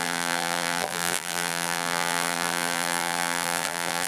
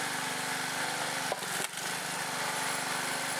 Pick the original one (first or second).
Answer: second